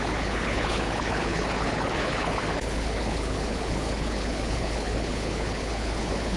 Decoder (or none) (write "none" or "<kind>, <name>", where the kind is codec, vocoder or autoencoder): codec, HILCodec